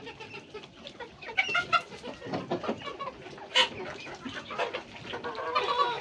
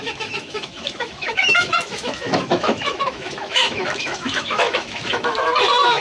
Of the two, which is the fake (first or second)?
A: second